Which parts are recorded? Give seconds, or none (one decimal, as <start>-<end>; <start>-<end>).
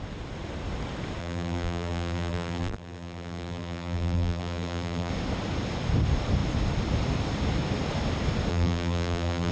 0.0-1.2; 5.1-8.5